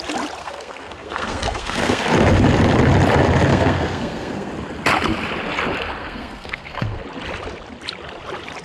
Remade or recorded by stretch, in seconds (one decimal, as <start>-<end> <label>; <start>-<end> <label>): 0.0-0.4 recorded; 0.4-2.0 remade; 2.0-3.5 recorded; 3.5-4.5 remade; 4.5-6.0 recorded; 6.0-7.0 remade; 7.0-8.6 recorded